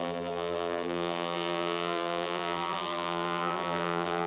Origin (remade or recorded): remade